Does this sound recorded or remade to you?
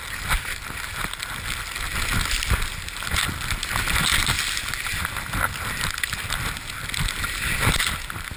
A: recorded